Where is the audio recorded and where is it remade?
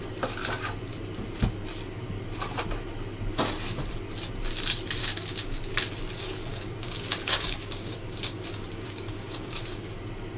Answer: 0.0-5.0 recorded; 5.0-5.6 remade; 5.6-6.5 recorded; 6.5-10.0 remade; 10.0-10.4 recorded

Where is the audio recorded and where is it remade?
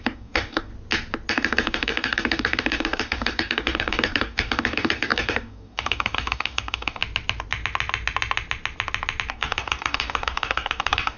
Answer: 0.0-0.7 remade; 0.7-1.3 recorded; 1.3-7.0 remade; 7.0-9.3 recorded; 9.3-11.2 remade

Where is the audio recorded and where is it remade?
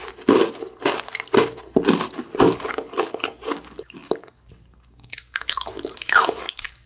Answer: 0.0-2.4 recorded; 2.4-6.9 remade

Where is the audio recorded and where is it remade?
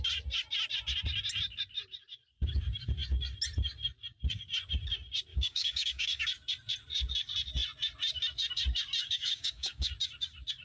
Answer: 0.0-5.3 recorded; 5.3-6.2 remade; 6.2-9.0 recorded; 9.0-9.9 remade; 9.9-10.6 recorded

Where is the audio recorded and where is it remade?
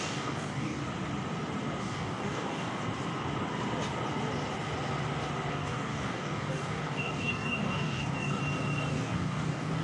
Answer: 0.0-0.8 remade; 0.8-1.8 recorded; 1.8-2.8 remade; 2.8-5.5 recorded; 5.5-8.4 remade; 8.4-8.9 recorded; 8.9-9.8 remade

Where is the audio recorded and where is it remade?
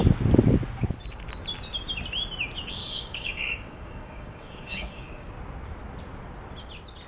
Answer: 0.0-2.8 recorded; 2.8-5.3 remade; 5.3-7.1 recorded